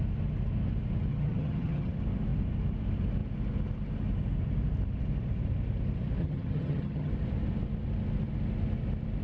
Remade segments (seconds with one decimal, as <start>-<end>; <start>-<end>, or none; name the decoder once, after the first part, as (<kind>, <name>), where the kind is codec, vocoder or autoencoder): 1.1-1.9 (vocoder, HiFi-GAN); 6.2-7.1